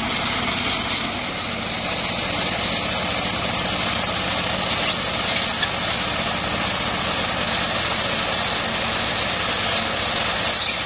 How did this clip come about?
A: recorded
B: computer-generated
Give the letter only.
A